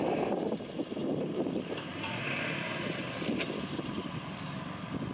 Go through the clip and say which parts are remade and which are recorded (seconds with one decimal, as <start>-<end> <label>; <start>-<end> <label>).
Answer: 0.0-1.0 recorded; 1.0-4.1 remade; 4.1-5.1 recorded